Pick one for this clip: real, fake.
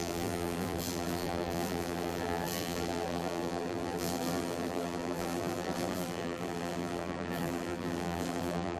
fake